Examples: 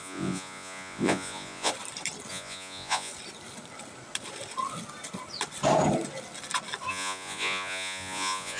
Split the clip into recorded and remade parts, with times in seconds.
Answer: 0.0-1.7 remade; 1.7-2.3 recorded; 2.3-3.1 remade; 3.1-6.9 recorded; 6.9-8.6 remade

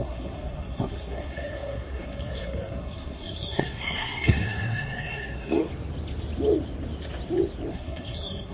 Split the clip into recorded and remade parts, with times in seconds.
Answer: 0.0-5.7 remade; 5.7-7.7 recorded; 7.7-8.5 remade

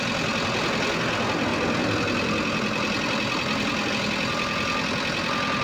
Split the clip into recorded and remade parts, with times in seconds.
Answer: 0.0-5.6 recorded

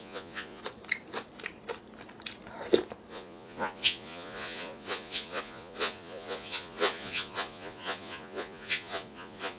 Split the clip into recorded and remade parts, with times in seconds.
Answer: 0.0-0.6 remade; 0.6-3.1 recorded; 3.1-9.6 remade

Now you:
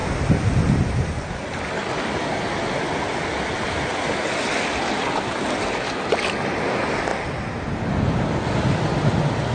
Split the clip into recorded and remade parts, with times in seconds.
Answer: 0.0-9.5 recorded

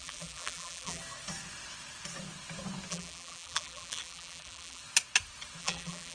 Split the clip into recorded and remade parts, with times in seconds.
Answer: 0.0-1.0 remade; 1.0-2.9 recorded; 2.9-4.8 remade; 4.8-5.6 recorded; 5.6-6.1 remade